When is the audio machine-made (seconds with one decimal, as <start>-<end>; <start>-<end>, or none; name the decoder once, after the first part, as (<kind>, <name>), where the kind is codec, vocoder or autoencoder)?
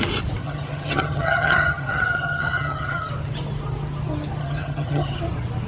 0.4-3.1 (vocoder, HiFi-GAN); 4.4-5.2